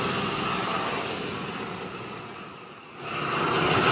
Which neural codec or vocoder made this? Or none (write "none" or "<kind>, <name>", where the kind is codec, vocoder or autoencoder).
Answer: none